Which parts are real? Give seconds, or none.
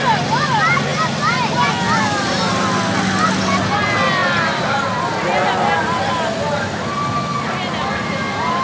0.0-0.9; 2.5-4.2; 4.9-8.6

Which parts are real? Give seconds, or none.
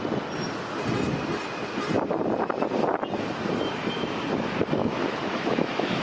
0.0-4.8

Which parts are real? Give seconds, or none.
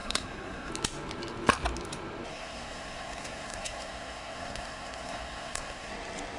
0.7-2.3; 5.9-6.4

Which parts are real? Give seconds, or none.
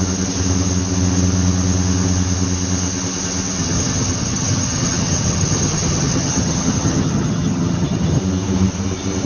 0.0-3.6; 8.2-9.3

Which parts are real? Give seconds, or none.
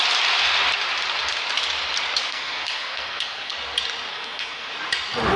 0.0-2.3; 3.5-4.1; 4.7-5.4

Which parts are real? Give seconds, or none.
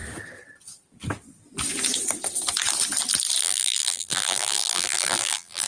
0.0-3.4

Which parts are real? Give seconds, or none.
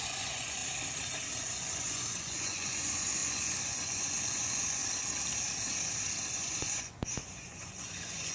0.6-1.4; 4.8-6.3